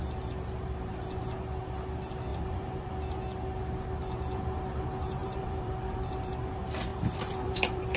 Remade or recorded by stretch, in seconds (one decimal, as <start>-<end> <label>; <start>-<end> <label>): 0.0-2.3 recorded; 2.3-2.9 remade; 2.9-5.2 recorded; 5.2-6.5 remade; 6.5-6.9 recorded; 6.9-8.0 remade